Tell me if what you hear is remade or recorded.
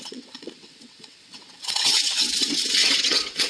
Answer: remade